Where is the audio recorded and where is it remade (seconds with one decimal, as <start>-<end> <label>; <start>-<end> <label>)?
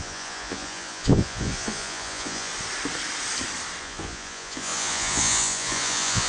0.0-2.5 remade; 2.5-3.8 recorded; 3.8-6.3 remade